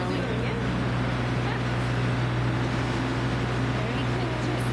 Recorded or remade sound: recorded